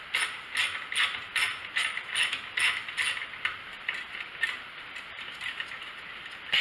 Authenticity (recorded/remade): recorded